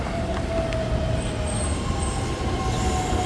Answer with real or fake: real